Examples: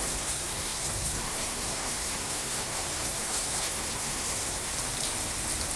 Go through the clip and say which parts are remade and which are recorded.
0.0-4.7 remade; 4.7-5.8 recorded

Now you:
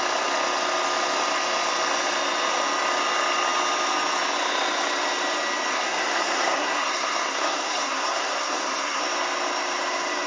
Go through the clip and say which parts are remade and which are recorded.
0.0-5.7 recorded; 5.7-9.0 remade; 9.0-10.3 recorded